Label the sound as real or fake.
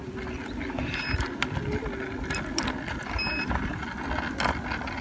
real